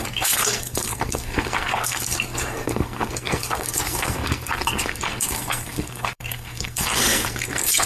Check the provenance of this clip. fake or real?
fake